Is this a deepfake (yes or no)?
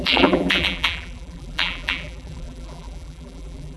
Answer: yes